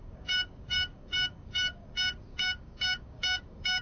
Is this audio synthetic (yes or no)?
yes